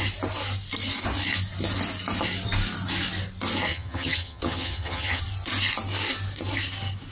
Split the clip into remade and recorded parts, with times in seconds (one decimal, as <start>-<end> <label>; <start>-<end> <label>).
0.0-3.7 recorded; 3.7-5.2 remade; 5.2-7.1 recorded